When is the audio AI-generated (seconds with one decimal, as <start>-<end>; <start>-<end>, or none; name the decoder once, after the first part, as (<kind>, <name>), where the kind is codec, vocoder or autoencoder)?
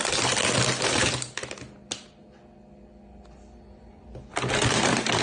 0.9-1.4 (vocoder, BigVGAN v2); 4.5-5.2